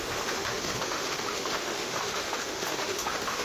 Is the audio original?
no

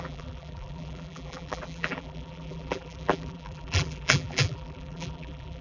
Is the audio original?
no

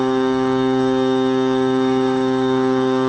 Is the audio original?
no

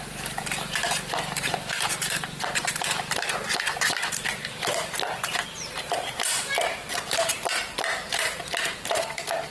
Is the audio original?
no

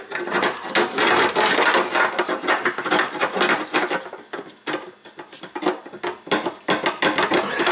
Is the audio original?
yes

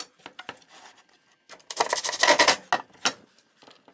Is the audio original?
yes